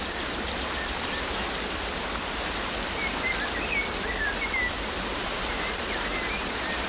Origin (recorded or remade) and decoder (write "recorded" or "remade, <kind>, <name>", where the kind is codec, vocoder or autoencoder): recorded